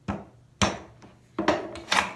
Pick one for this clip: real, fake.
real